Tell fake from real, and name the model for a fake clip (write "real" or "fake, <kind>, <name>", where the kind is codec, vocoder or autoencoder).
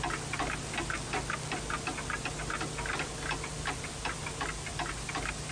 real